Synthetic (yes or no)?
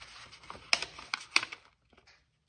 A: no